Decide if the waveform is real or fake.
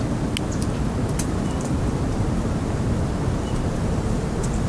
real